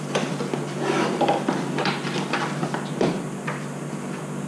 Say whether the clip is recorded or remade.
recorded